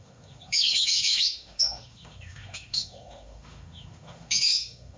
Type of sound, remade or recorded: remade